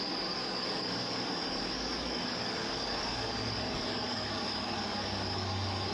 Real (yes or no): no